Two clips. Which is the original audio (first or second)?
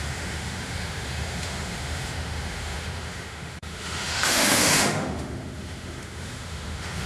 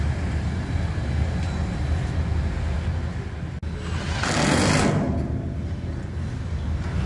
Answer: second